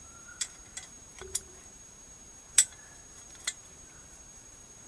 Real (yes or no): no